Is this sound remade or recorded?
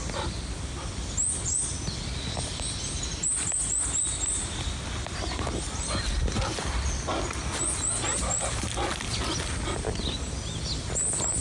recorded